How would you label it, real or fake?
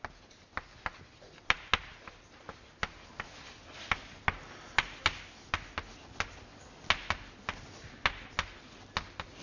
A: real